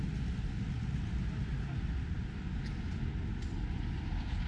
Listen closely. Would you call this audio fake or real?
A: real